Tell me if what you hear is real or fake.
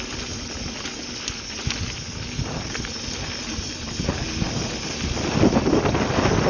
real